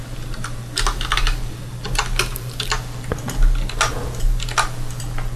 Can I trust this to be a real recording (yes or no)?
yes